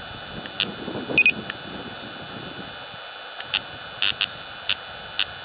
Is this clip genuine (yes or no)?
yes